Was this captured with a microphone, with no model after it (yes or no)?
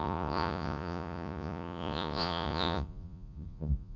no